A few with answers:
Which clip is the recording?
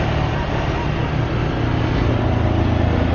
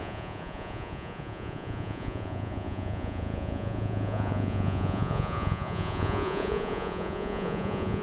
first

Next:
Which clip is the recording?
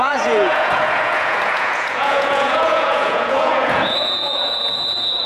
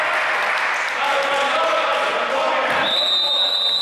second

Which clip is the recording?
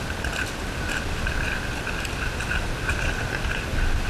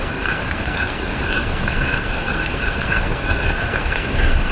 first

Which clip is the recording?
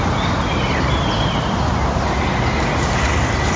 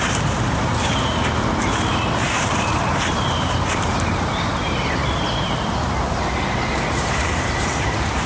first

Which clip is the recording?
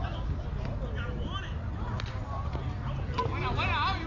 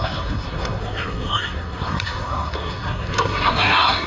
first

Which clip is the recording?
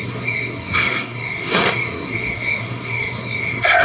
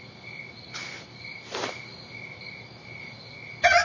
second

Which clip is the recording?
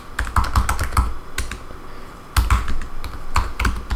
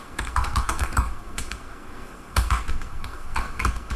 first